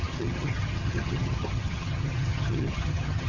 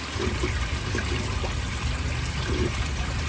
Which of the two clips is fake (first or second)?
first